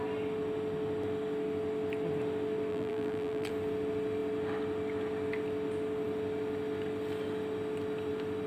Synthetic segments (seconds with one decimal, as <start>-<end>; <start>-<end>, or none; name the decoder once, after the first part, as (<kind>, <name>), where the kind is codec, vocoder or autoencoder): 2.7-3.5 (vocoder, BigVGAN v2)